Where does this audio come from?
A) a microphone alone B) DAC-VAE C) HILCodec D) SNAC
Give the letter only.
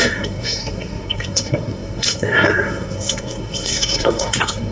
D